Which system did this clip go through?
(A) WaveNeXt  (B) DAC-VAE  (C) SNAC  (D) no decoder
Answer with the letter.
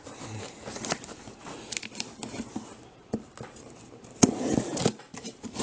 D